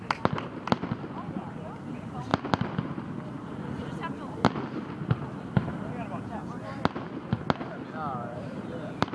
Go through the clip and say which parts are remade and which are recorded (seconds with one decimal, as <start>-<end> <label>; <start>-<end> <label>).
0.0-2.3 remade; 2.3-7.4 recorded; 7.4-9.1 remade